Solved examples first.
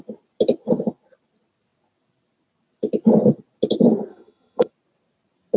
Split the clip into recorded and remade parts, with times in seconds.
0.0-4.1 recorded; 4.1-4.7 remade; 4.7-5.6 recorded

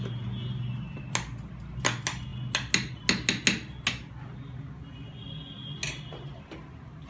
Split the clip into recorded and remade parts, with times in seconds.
0.0-7.1 recorded

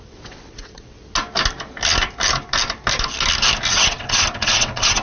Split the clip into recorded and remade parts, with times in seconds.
0.0-1.0 remade; 1.0-3.7 recorded; 3.7-5.0 remade